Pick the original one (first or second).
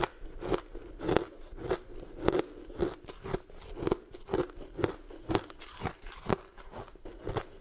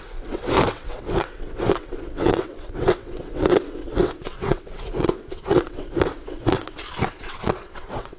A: first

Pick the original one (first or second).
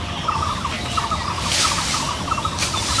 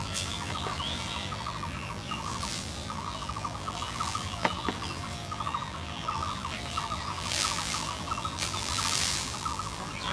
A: first